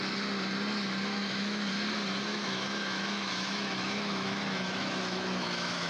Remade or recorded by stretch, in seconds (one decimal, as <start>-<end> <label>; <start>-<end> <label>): 0.0-1.1 recorded; 1.1-1.7 remade; 1.7-2.3 recorded; 2.3-5.9 remade